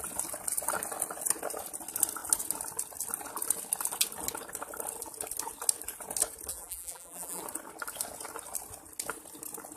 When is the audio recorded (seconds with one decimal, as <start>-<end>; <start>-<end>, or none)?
0.0-6.5; 7.4-9.8